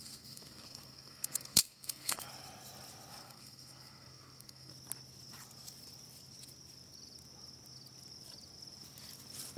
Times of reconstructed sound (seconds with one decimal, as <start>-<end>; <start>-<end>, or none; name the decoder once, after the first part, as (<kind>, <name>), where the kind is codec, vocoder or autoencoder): 0.0-2.3 (codec, SNAC); 3.2-4.7